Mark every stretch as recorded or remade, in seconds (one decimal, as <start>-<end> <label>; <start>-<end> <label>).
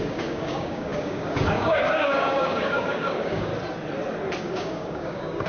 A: 0.0-3.5 remade; 3.5-4.4 recorded; 4.4-5.5 remade